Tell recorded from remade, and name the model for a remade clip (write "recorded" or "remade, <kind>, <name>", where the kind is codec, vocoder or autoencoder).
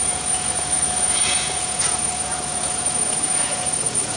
remade, vocoder, Vocos